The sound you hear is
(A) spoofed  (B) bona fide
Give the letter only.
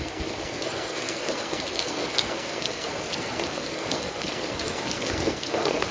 A